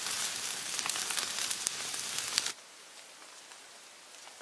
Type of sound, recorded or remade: recorded